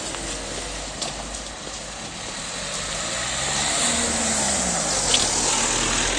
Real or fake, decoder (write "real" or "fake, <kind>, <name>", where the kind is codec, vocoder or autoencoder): real